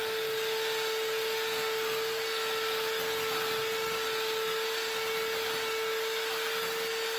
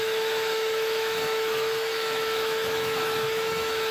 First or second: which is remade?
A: second